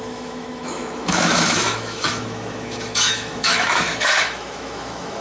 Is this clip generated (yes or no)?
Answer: yes